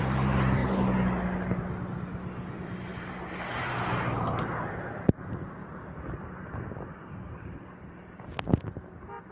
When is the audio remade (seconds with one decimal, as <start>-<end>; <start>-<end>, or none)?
0.0-0.6; 2.0-2.9; 4.7-9.3